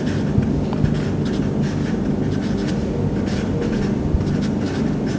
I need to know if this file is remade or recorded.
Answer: recorded